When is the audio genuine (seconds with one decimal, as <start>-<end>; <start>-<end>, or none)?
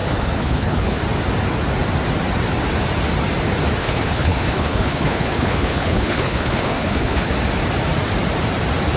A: 1.0-3.8; 7.3-9.0